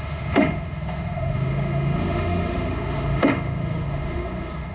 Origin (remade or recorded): remade